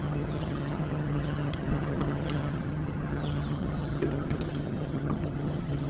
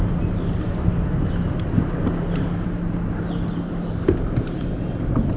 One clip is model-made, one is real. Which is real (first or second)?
second